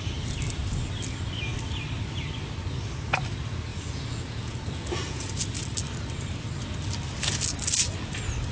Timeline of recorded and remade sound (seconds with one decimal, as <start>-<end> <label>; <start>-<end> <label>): 0.0-3.7 recorded; 3.7-5.4 remade; 5.4-8.5 recorded